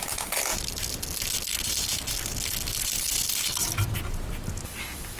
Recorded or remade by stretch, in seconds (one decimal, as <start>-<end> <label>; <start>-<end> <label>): 0.0-5.2 recorded